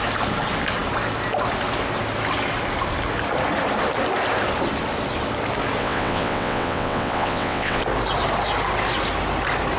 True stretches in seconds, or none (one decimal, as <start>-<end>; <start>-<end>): 0.0-5.8; 7.8-9.8